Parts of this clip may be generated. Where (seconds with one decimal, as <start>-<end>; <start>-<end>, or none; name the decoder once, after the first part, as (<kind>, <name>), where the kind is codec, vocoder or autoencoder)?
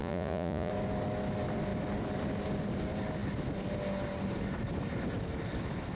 0.0-0.7 (vocoder, Vocos)